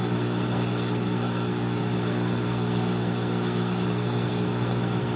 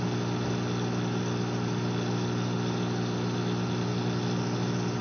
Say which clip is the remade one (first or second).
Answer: first